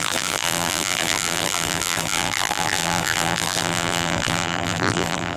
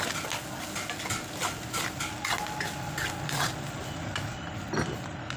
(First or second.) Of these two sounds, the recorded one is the second